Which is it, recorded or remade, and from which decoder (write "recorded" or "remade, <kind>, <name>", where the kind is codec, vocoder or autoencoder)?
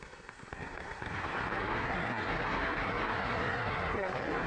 remade, codec, SNAC